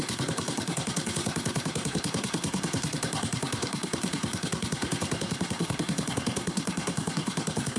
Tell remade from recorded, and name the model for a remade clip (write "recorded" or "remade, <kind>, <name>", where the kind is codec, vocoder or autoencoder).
remade, codec, SNAC